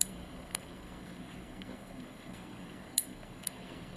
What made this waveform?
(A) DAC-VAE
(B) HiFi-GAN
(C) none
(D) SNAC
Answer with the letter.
D